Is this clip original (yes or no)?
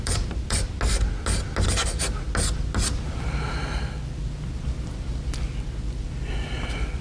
yes